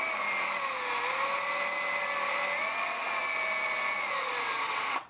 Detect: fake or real real